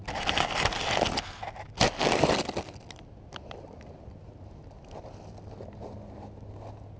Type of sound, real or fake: real